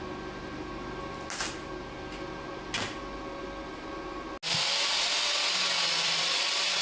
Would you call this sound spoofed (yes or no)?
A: no